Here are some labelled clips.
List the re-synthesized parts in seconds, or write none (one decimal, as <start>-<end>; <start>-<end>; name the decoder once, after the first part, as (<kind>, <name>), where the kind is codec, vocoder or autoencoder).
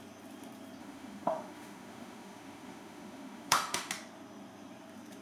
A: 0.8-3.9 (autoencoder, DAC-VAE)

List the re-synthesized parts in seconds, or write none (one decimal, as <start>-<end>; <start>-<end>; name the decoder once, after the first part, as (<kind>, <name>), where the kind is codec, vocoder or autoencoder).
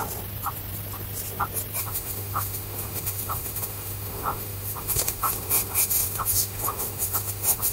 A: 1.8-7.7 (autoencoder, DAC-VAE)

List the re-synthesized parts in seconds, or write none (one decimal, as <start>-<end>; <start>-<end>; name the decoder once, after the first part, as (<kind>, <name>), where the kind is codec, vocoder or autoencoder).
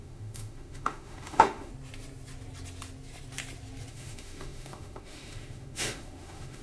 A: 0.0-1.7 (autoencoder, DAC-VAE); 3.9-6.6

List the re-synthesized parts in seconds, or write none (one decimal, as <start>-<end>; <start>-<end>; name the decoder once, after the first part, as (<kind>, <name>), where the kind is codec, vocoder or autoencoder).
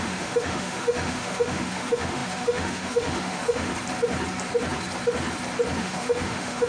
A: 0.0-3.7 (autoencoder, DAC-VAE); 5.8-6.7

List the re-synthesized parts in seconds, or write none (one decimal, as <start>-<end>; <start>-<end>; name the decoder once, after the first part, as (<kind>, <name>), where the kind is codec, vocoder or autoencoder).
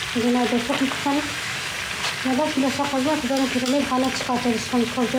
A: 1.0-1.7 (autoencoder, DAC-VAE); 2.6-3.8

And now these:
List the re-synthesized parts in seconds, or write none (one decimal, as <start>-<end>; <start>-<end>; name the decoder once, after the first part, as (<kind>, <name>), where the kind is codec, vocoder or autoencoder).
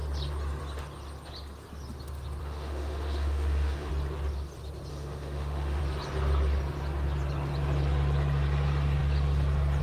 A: 2.4-3.9 (autoencoder, DAC-VAE); 4.9-5.8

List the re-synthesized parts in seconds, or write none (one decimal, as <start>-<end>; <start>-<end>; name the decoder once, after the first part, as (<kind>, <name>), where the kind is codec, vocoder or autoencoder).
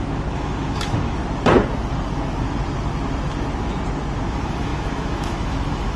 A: 0.0-1.2 (autoencoder, DAC-VAE); 4.3-6.0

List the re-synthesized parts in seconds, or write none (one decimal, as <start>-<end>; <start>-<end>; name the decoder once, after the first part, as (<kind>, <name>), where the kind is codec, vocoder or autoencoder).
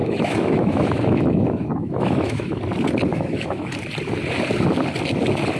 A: 0.0-2.6 (autoencoder, DAC-VAE); 3.1-3.7